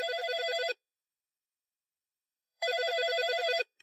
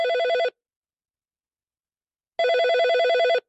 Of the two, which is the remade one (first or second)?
first